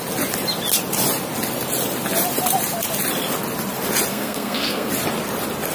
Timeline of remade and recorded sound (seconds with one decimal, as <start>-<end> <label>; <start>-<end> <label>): 0.0-4.1 recorded; 4.1-4.9 remade; 4.9-5.7 recorded